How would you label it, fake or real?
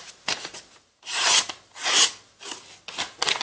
real